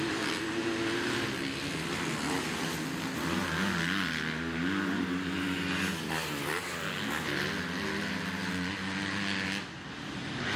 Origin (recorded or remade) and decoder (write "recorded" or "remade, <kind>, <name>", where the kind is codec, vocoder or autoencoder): recorded